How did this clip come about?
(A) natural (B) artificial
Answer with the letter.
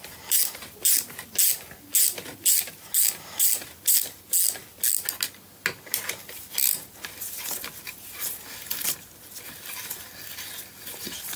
A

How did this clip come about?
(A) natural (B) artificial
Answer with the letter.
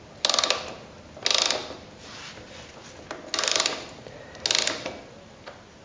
A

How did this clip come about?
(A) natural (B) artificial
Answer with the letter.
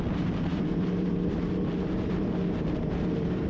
B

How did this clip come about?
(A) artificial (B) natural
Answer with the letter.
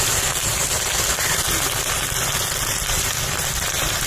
B